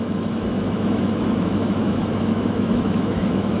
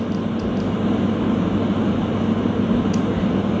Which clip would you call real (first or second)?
second